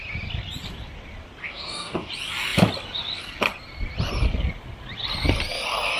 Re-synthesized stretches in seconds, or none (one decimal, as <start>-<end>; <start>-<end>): 1.4-2.1